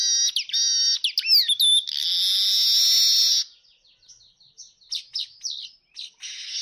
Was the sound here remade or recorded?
recorded